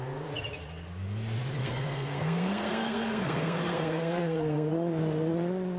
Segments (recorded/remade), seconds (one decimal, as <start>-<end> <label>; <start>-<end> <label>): 0.0-1.6 recorded; 1.6-4.7 remade; 4.7-5.8 recorded